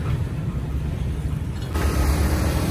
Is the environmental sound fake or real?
real